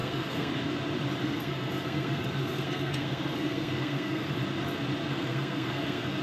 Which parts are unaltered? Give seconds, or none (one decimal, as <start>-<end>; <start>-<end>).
0.5-1.2; 4.3-5.1